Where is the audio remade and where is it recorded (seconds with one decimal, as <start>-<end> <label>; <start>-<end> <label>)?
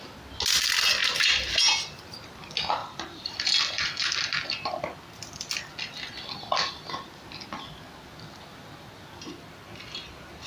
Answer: 0.0-1.0 recorded; 1.0-1.6 remade; 1.6-2.8 recorded; 2.8-3.3 remade; 3.3-10.5 recorded